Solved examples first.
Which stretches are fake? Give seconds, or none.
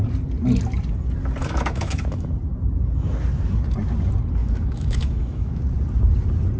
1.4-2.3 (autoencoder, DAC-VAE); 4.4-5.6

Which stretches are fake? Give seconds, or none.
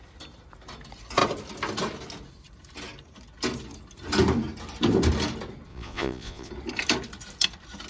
5.7-6.5 (vocoder, Vocos)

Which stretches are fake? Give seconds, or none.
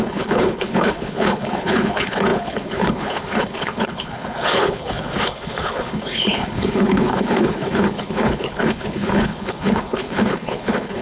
0.0-11.0 (codec, HILCodec)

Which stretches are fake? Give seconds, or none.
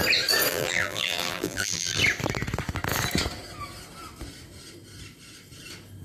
0.5-2.0 (vocoder, BigVGAN v2)